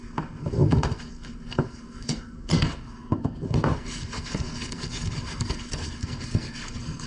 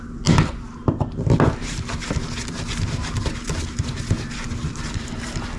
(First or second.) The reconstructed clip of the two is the first